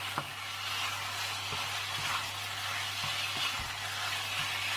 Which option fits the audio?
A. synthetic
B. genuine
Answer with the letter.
B